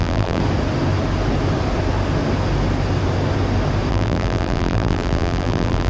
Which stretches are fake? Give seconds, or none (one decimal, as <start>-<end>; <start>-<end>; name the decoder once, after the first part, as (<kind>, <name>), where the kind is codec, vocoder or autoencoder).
0.0-0.4 (vocoder, BigVGAN v2); 3.9-5.9

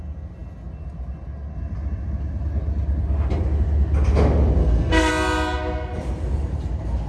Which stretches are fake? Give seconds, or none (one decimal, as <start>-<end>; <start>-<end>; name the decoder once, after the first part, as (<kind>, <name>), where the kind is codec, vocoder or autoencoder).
4.6-5.1 (codec, SNAC)